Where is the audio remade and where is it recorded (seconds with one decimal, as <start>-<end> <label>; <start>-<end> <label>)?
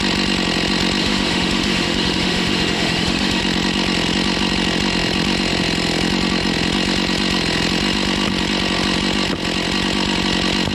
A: 0.0-1.0 recorded; 1.0-3.4 remade; 3.4-10.7 recorded